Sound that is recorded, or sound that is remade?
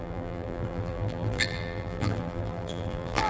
remade